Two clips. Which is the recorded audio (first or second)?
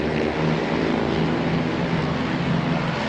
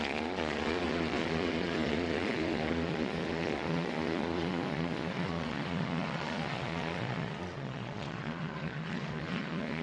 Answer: first